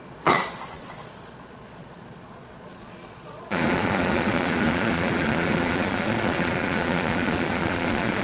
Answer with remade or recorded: remade